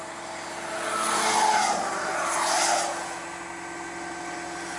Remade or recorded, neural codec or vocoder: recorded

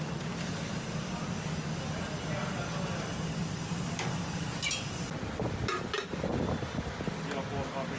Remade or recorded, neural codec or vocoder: recorded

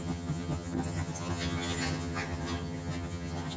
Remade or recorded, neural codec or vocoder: remade, vocoder, HiFi-GAN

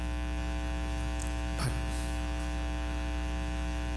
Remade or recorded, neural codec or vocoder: recorded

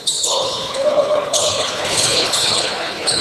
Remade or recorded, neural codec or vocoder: remade, codec, HILCodec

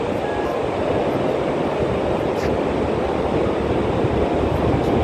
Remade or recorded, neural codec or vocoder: remade, vocoder, BigVGAN v2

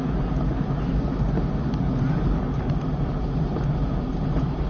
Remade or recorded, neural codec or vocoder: recorded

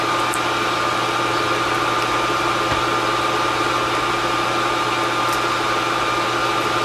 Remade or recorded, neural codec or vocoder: recorded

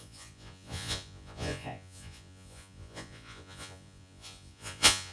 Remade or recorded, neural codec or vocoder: remade, vocoder, Vocos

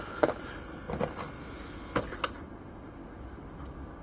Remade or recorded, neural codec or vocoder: recorded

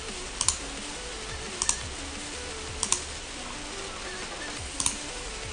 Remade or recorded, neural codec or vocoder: recorded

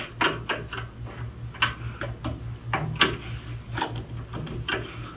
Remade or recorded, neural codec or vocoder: recorded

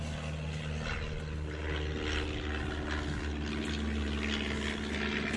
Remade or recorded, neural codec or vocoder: recorded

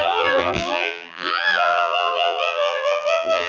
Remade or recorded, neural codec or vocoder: remade, vocoder, BigVGAN v2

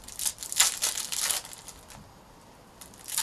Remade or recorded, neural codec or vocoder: recorded